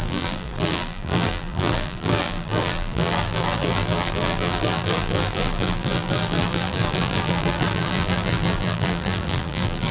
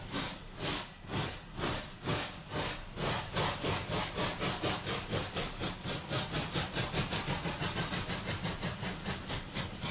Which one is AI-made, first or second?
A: first